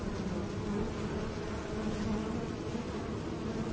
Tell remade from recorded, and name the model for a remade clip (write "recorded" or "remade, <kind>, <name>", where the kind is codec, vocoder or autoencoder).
recorded